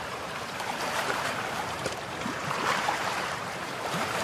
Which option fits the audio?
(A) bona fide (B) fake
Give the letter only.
B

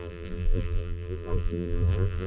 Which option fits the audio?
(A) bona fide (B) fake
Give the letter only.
B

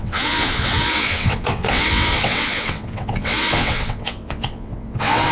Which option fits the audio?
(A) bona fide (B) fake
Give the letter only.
B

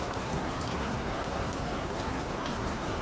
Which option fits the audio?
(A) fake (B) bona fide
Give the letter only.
A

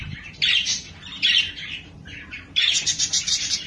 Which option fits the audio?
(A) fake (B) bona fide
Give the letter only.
A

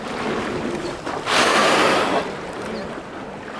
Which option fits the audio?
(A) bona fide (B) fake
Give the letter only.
A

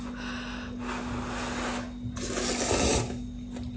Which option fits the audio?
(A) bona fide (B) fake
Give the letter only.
A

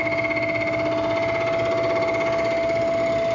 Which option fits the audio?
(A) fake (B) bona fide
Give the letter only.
B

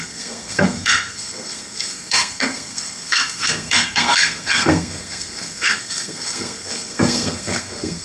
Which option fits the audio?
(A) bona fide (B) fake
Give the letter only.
B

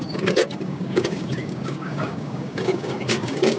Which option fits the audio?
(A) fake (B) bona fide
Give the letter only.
A